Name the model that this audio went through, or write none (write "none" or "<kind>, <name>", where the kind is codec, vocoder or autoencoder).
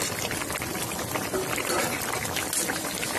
none